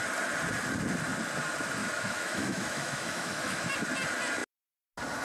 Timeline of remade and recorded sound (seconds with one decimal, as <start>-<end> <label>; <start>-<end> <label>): 0.0-1.8 recorded; 1.8-3.7 remade; 3.7-5.2 recorded